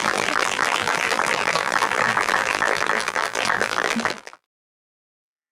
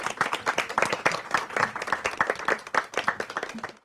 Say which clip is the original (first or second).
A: second